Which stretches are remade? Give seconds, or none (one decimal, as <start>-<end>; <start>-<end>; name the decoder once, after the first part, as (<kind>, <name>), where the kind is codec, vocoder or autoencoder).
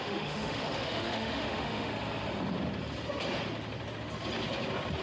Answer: 0.0-1.9 (autoencoder, DAC-VAE)